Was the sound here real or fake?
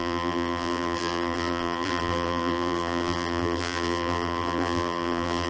fake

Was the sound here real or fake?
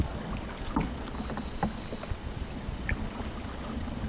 real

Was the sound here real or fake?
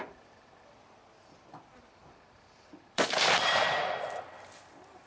fake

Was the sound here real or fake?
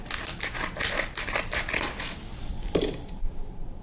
real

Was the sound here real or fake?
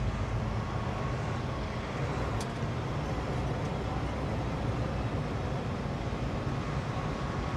fake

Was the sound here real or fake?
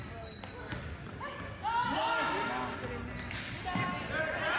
real